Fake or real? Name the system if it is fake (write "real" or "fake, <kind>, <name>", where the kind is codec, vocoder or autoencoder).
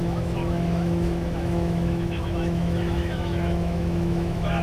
fake, autoencoder, DAC-VAE